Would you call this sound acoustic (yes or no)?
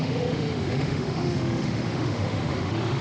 no